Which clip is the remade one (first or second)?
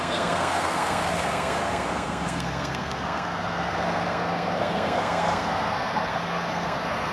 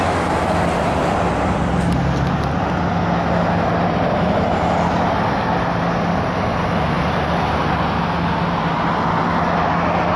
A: first